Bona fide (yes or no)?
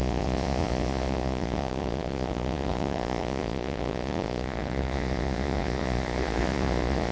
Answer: no